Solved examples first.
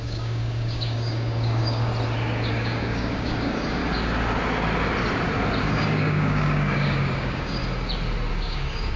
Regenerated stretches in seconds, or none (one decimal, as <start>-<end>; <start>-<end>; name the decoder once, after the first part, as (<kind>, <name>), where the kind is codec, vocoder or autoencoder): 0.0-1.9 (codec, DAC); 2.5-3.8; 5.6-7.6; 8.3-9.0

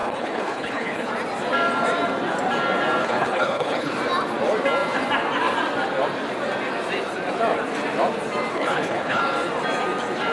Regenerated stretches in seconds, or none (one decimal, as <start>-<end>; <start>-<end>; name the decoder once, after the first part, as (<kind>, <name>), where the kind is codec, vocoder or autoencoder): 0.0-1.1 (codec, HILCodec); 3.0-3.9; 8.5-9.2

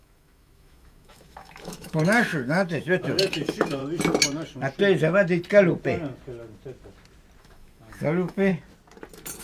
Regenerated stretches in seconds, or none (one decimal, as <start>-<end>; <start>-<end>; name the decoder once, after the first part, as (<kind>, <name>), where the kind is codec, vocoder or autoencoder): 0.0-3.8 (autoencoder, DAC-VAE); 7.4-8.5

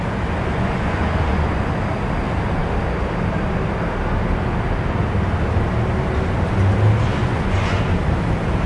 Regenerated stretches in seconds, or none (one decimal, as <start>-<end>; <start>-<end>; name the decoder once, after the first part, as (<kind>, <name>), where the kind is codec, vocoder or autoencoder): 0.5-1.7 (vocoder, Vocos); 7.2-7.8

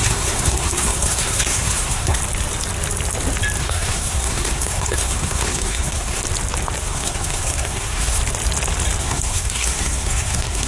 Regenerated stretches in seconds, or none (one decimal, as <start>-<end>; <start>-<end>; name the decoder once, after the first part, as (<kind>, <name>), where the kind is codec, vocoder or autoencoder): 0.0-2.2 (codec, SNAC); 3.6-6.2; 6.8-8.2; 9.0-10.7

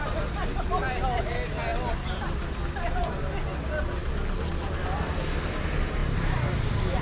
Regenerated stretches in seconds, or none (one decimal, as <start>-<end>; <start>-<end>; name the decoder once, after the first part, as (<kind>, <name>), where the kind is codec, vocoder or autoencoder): none

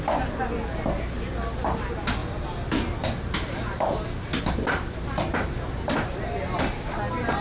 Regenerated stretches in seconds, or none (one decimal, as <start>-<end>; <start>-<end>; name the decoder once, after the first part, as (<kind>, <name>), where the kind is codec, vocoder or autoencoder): none